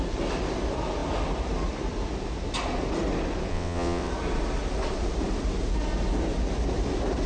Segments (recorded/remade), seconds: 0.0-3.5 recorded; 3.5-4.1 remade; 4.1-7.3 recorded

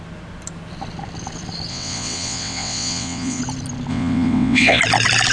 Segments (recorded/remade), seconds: 0.0-1.7 recorded; 1.7-3.4 remade; 3.4-3.9 recorded; 3.9-4.8 remade; 4.8-5.3 recorded

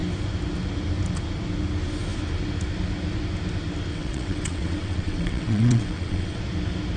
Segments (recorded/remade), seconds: 0.0-3.9 recorded; 3.9-6.4 remade; 6.4-7.0 recorded